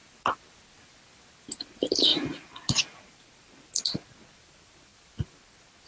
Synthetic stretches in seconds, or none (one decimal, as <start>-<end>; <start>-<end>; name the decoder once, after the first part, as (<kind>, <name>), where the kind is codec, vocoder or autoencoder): none